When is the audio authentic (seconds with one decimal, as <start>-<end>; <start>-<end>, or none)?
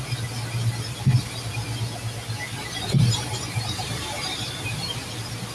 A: 0.0-2.6; 5.1-5.5